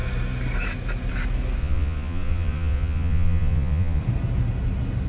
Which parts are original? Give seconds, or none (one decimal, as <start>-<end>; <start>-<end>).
0.0-1.6; 4.0-5.1